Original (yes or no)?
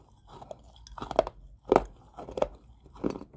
yes